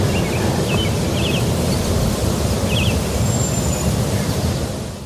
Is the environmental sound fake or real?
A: real